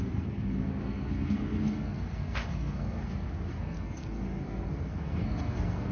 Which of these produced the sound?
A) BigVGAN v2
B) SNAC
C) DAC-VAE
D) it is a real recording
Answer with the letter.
B